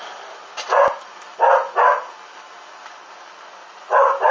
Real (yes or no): yes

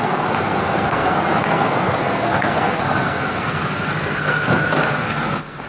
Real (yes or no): no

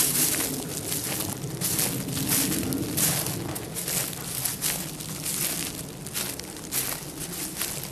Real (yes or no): yes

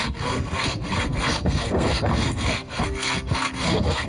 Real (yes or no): no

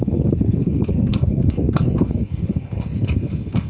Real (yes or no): no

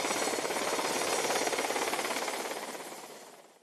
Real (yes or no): yes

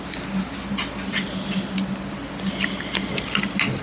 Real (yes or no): yes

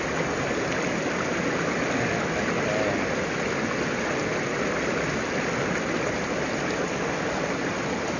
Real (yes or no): yes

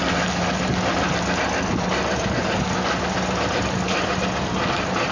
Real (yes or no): yes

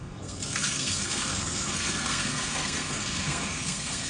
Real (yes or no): no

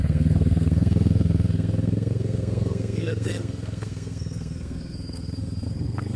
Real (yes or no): no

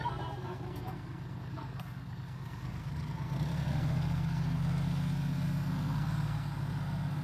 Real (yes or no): no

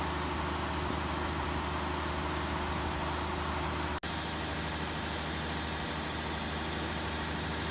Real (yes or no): yes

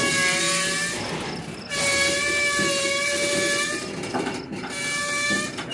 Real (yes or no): yes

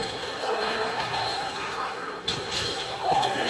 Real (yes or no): no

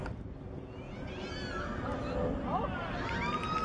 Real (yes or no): yes